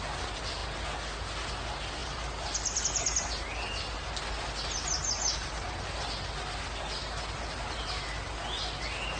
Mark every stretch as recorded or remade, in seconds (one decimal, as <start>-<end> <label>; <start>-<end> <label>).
0.0-2.0 recorded; 2.0-2.8 remade; 2.8-9.2 recorded